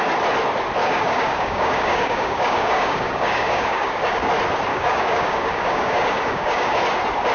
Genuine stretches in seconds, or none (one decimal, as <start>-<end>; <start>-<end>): 0.0-0.8; 4.3-4.7; 6.8-7.3